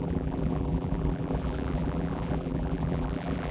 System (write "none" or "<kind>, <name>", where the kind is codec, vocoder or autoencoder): vocoder, BigVGAN v2